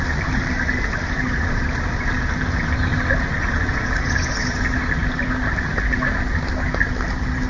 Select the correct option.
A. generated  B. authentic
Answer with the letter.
B